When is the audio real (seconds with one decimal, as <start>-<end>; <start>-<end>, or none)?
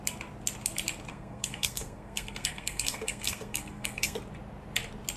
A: 0.0-1.1; 4.2-5.2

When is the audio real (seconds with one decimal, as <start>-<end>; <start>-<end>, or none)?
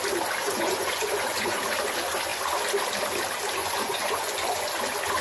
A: 0.0-0.4; 1.6-3.6; 4.8-5.2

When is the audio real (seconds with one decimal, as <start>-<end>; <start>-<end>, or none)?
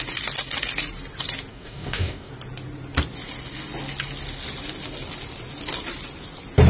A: 0.0-1.5; 2.3-6.7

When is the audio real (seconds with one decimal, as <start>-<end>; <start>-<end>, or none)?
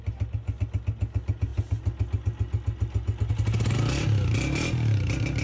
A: 0.0-5.4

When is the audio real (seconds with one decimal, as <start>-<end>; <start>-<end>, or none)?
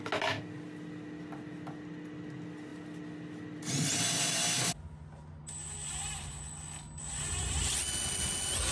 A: 0.0-8.7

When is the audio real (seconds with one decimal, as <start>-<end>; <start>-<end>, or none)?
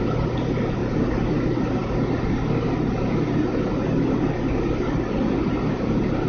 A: 0.0-6.3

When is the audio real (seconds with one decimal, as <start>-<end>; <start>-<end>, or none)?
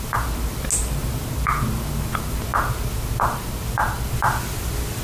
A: 0.0-5.0